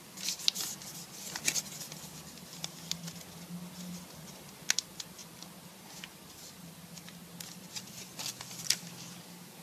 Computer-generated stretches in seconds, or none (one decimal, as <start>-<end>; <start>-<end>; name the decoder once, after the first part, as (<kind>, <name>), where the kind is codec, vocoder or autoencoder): none

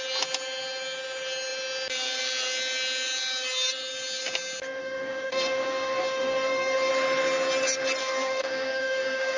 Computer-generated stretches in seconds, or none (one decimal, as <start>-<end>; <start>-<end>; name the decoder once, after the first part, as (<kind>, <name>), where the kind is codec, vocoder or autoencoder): 4.8-6.9 (codec, DAC); 8.0-9.4

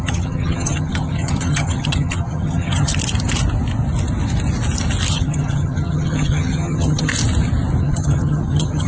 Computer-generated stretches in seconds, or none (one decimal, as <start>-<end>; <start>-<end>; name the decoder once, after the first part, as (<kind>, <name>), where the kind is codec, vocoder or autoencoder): 0.0-2.9 (vocoder, HiFi-GAN); 5.1-7.1; 7.8-8.9